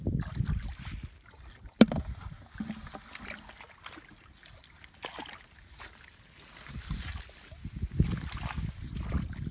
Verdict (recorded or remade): recorded